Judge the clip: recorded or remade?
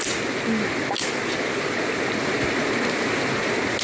recorded